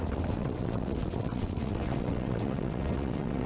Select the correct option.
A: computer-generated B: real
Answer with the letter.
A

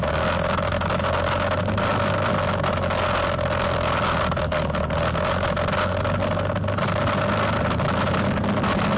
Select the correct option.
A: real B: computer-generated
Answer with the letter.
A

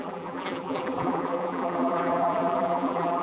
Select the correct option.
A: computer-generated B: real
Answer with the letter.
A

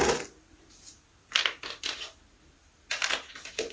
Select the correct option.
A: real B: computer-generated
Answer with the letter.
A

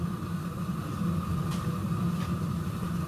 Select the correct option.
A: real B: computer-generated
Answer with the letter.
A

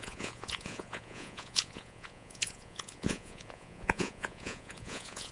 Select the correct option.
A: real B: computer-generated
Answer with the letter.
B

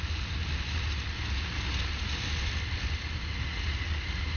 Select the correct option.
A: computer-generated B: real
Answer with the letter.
B